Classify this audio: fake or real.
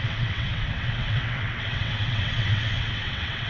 fake